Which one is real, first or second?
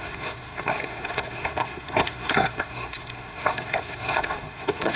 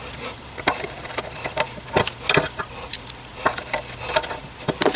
second